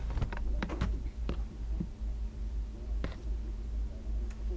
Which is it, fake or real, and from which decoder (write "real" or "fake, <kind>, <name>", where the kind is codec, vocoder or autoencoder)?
real